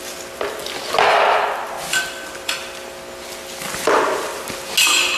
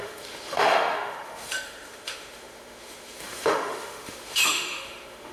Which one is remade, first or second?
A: second